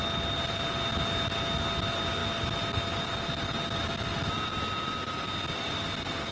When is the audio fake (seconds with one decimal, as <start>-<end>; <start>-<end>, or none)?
none